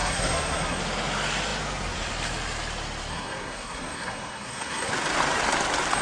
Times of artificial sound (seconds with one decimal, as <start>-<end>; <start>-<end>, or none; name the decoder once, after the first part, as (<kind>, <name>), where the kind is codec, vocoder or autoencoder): 0.0-0.8 (codec, SNAC); 3.1-4.9